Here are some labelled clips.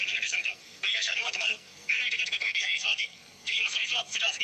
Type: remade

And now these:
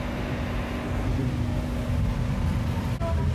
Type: recorded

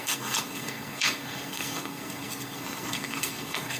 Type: remade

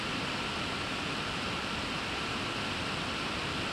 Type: recorded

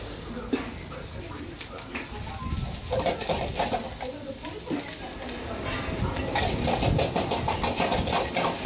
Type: recorded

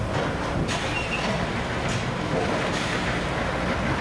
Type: recorded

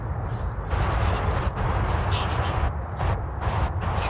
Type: recorded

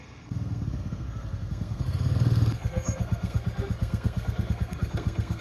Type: remade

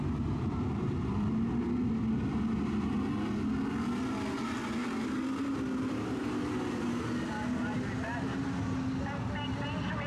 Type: recorded